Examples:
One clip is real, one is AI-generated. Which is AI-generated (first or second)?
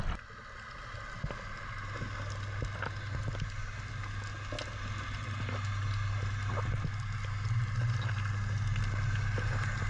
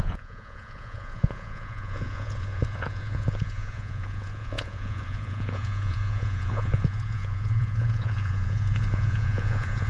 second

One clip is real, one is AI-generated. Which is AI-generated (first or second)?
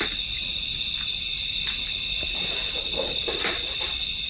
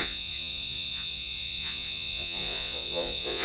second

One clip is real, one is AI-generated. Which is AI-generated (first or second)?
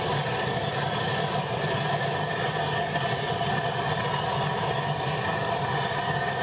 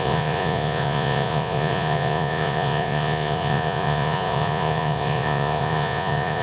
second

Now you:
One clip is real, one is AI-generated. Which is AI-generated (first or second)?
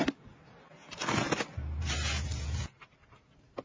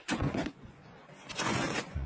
second